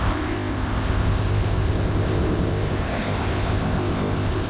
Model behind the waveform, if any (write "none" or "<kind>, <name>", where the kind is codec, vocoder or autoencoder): codec, ZipCodec